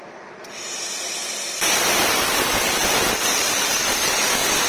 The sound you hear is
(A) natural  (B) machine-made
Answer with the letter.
B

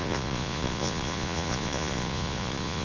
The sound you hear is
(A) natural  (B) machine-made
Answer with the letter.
B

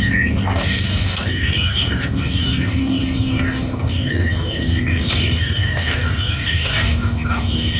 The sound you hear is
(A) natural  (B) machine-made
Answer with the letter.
B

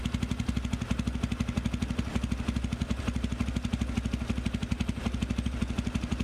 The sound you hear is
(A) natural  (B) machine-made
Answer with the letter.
A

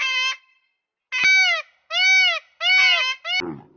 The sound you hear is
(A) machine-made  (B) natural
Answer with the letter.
B